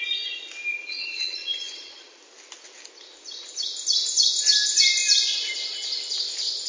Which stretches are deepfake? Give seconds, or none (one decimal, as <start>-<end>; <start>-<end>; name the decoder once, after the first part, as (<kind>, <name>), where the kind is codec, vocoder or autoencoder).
0.7-2.2 (vocoder, Vocos)